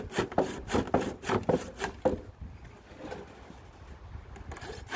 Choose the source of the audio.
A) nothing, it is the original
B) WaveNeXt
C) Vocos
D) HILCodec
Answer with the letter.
A